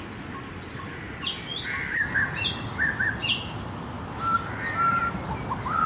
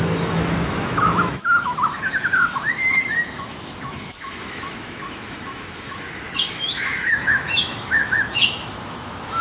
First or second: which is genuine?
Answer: first